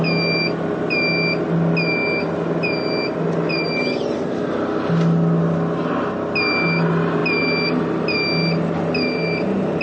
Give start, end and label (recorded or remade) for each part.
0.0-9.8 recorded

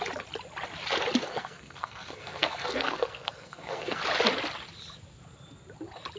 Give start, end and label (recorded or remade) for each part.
0.0-1.2 recorded; 1.2-4.0 remade; 4.0-6.2 recorded

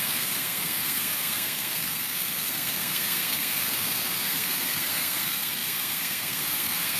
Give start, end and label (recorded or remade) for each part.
0.0-7.0 remade

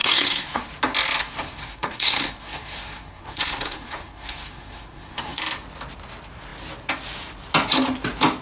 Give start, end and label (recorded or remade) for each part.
0.0-0.7 remade; 0.7-1.2 recorded; 1.2-5.4 remade; 5.4-8.4 recorded

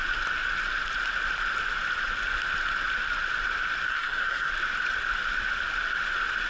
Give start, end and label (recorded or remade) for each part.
0.0-3.9 recorded; 3.9-4.5 remade; 4.5-6.5 recorded

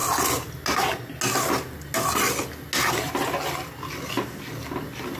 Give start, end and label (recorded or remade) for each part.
0.0-5.2 recorded

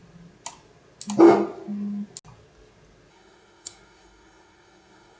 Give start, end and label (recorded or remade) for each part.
0.0-3.1 recorded; 3.1-5.2 remade